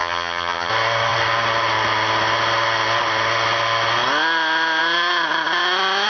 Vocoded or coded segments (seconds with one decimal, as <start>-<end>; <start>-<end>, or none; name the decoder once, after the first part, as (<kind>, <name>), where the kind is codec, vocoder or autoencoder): 0.0-0.7 (vocoder, HiFi-GAN)